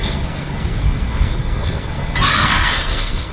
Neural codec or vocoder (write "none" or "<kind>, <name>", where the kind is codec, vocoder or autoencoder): codec, SNAC